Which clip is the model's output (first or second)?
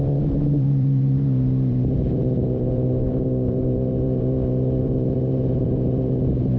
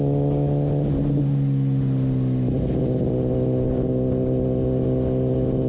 first